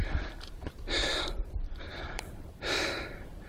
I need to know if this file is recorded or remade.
remade